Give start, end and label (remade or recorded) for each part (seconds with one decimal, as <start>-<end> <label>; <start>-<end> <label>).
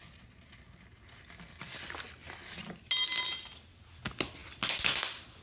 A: 0.0-5.4 recorded